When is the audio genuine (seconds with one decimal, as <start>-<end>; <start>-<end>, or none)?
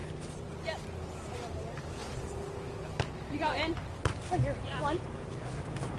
0.0-6.0